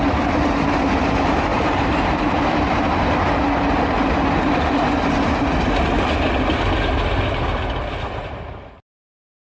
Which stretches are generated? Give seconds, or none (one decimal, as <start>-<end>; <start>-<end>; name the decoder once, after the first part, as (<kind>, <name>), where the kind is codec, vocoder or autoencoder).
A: none